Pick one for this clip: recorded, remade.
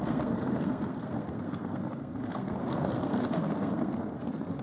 remade